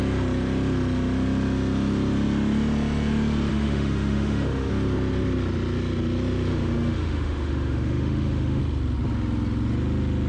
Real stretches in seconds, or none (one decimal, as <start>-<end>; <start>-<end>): 0.0-3.5; 4.7-6.5; 8.6-10.3